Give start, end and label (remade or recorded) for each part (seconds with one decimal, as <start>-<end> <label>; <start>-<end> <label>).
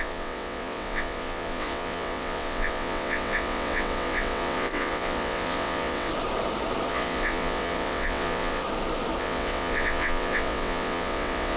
0.0-6.1 remade; 6.1-6.9 recorded; 6.9-8.6 remade; 8.6-9.2 recorded; 9.2-11.6 remade